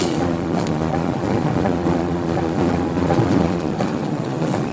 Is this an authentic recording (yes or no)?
no